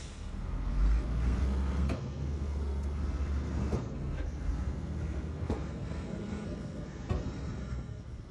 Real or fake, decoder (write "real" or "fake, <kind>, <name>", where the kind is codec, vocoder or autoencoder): fake, codec, SNAC